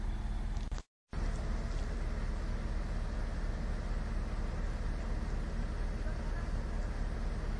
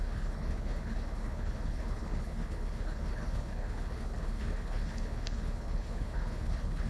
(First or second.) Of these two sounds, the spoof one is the second